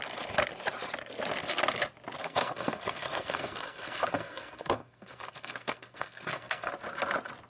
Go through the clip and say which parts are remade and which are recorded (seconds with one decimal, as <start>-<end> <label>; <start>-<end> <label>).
0.0-2.2 recorded; 2.2-6.7 remade; 6.7-7.5 recorded